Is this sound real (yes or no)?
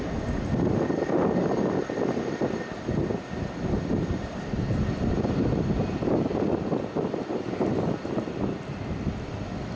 yes